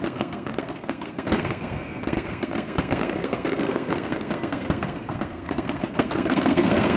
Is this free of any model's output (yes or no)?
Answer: no